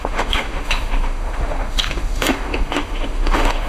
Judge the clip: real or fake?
fake